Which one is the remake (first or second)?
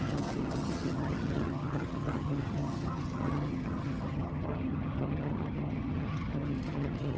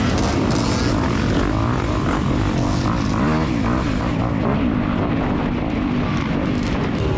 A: first